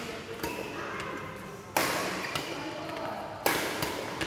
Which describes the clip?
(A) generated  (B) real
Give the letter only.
B